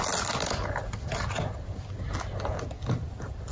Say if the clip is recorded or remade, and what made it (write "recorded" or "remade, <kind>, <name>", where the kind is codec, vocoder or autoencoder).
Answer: recorded